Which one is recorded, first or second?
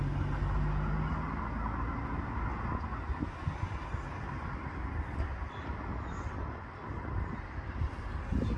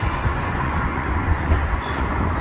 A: first